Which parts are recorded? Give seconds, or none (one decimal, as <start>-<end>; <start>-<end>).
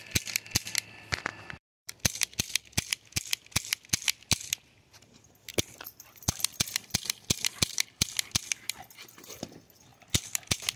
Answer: 0.0-1.3; 2.4-5.5; 8.1-10.8